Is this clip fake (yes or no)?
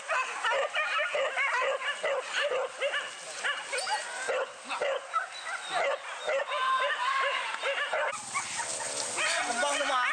no